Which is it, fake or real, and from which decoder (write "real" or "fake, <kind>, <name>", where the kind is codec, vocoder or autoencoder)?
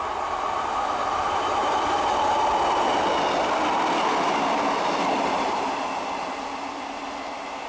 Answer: real